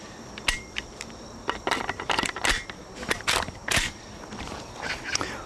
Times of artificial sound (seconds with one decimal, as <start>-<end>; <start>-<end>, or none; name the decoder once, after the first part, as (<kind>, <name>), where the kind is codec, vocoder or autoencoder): 0.0-3.6 (vocoder, BigVGAN v2); 4.2-5.5